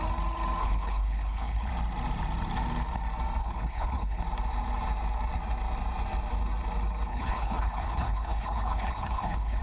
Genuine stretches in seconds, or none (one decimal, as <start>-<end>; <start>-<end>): 0.0-0.6; 1.7-3.4; 4.2-7.1